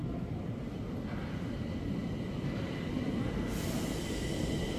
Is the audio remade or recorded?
recorded